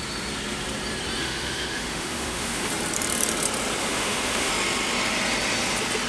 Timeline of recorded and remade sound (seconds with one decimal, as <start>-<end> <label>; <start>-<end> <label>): 0.0-1.2 recorded; 1.2-2.7 remade; 2.7-3.8 recorded; 3.8-4.5 remade; 4.5-6.1 recorded